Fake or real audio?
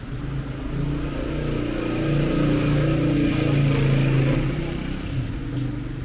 real